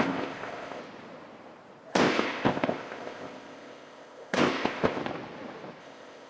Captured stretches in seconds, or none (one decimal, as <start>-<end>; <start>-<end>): 0.8-1.9; 5.0-5.8